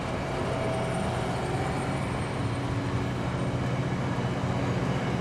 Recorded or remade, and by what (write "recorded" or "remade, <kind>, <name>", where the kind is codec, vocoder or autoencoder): recorded